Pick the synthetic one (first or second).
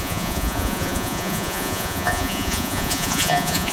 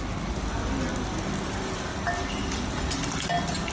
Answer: first